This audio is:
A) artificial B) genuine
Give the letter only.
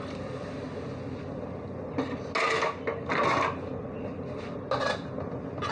B